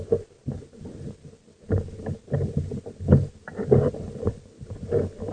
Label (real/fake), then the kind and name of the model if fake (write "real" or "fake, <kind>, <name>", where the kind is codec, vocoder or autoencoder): real